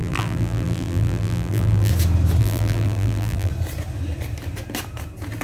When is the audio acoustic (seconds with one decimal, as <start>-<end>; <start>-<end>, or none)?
1.9-2.4; 3.5-5.4